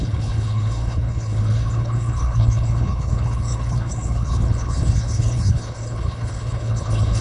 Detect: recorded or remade remade